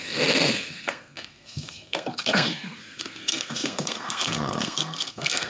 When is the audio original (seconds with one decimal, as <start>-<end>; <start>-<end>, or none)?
none